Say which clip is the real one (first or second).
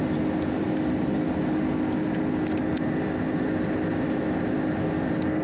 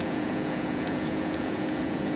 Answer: first